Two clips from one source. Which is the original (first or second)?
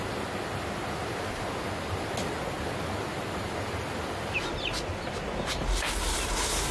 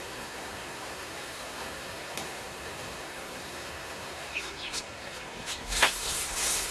first